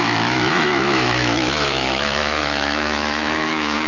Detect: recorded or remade remade